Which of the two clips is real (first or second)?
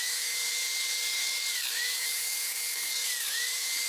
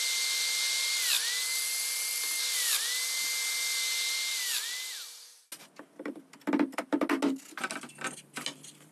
second